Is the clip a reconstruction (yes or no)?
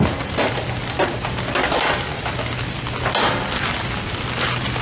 no